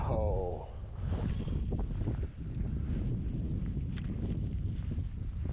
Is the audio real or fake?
real